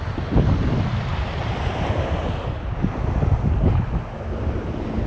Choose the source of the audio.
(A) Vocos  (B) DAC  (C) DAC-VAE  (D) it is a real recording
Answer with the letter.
D